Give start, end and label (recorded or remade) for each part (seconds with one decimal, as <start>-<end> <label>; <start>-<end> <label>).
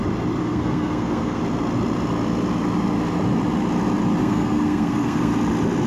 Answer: 0.0-0.4 recorded; 0.4-1.4 remade; 1.4-4.2 recorded; 4.2-5.3 remade; 5.3-5.9 recorded